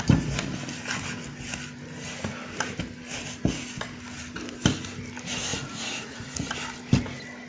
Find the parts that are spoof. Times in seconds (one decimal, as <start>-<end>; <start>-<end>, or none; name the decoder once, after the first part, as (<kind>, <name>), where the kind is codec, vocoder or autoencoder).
5.5-6.5 (vocoder, Vocos)